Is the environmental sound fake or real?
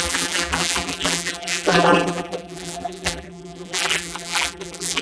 fake